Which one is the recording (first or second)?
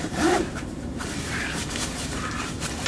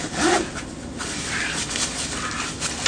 second